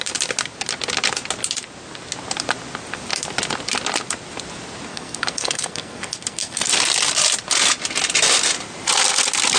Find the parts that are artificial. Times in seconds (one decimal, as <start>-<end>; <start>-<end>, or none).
4.9-6.7

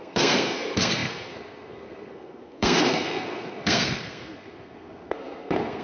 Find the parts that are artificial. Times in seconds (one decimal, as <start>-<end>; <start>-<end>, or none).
0.0-5.8

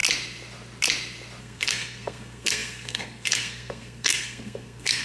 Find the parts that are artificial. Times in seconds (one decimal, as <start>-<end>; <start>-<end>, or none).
1.4-5.0